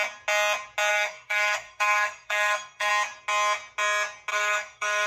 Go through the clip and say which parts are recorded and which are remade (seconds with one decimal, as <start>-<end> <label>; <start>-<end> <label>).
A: 0.0-0.9 recorded; 0.9-2.9 remade; 2.9-4.3 recorded; 4.3-5.1 remade